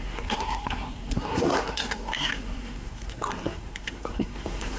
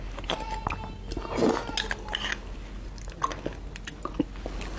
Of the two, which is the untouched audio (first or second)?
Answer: second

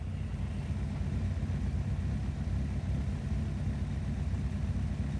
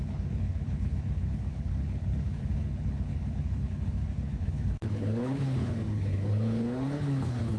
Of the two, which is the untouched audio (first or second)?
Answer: first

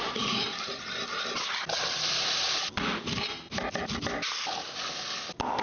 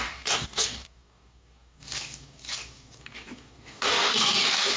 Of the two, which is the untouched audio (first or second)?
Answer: first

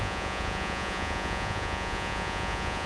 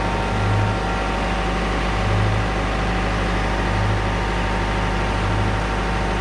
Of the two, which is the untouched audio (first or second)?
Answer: second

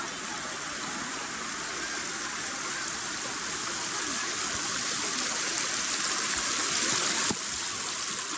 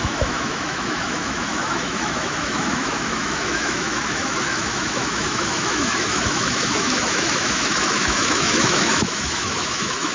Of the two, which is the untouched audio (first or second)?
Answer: first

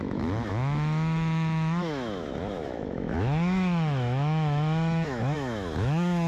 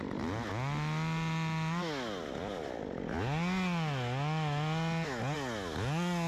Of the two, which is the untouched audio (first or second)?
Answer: second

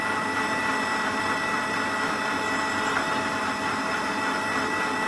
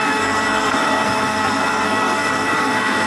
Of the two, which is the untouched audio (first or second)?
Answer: first